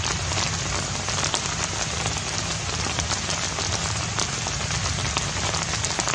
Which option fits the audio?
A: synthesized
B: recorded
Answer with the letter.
B